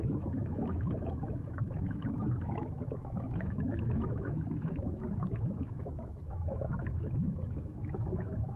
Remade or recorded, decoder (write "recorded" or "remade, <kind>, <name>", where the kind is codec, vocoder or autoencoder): remade, autoencoder, DAC-VAE